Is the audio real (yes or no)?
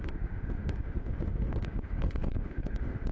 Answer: no